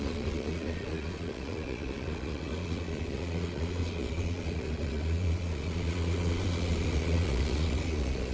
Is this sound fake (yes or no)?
yes